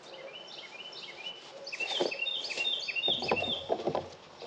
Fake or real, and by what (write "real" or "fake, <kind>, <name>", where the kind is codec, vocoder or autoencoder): real